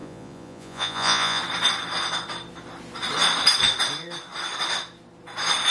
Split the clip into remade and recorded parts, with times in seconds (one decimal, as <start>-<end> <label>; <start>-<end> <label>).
0.0-1.4 remade; 1.4-5.7 recorded